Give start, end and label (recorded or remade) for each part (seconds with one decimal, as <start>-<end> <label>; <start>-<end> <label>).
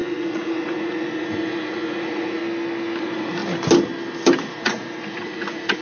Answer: 0.0-2.4 remade; 2.4-3.0 recorded; 3.0-3.4 remade; 3.4-4.5 recorded; 4.5-5.8 remade